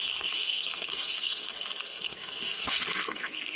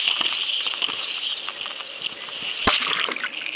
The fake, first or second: first